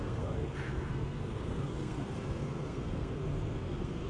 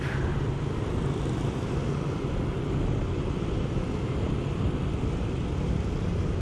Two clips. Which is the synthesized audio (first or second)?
first